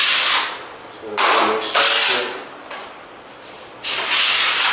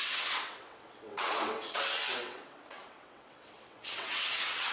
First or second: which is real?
first